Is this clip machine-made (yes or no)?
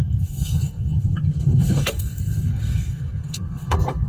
yes